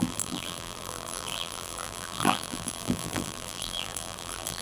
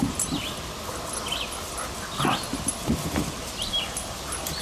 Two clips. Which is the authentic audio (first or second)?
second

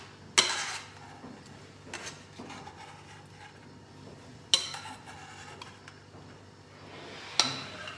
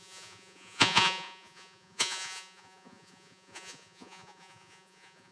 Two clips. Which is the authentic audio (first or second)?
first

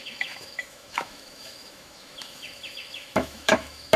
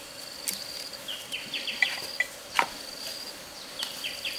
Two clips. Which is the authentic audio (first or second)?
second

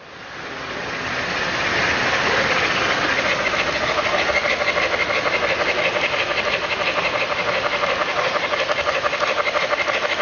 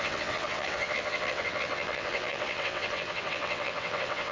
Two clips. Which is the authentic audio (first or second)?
first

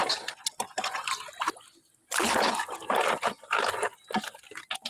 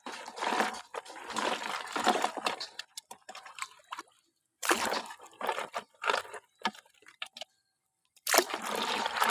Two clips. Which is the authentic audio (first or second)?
first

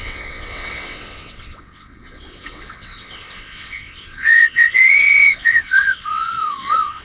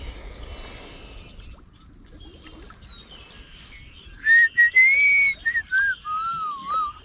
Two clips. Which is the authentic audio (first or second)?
second